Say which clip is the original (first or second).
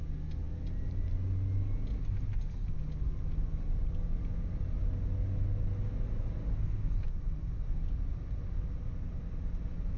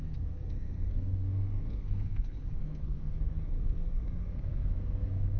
first